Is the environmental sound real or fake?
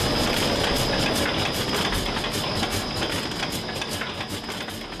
real